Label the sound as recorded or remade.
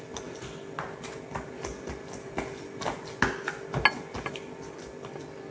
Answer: recorded